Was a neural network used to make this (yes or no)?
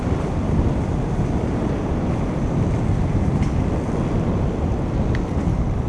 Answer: no